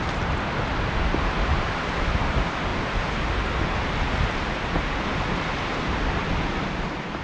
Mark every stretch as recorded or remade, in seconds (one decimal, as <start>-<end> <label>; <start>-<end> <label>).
0.0-7.2 recorded